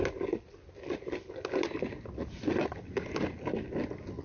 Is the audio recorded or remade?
recorded